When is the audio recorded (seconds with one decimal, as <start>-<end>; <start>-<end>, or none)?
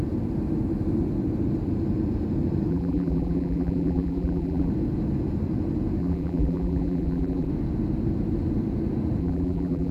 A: 0.0-2.7; 4.7-6.0; 7.5-9.2